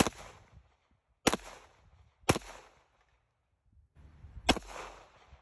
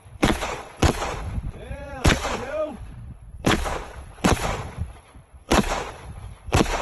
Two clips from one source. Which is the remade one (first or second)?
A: second